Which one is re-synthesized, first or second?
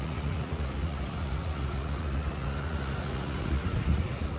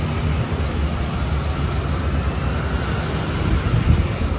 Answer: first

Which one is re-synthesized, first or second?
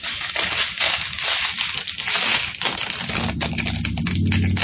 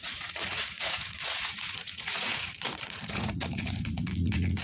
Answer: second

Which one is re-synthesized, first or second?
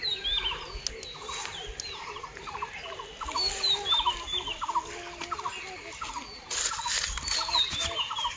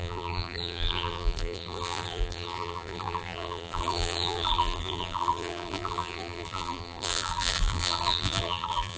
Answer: second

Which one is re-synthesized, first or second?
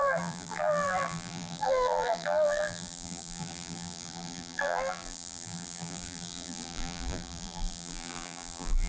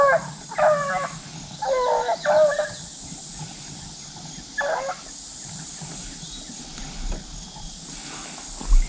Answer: first